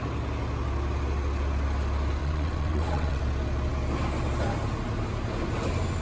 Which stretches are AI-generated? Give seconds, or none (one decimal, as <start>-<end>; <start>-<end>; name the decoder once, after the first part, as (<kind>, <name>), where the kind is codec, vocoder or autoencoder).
2.2-3.2 (vocoder, WaveNeXt)